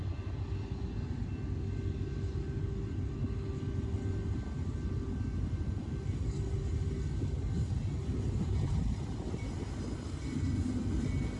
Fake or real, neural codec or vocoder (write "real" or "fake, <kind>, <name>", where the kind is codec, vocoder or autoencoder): real